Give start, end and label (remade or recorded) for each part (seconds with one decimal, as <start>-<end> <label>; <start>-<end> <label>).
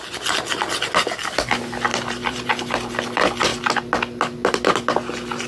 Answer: 0.0-1.9 recorded; 1.9-2.6 remade; 2.6-5.5 recorded